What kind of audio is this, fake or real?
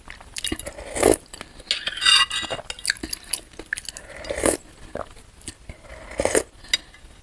real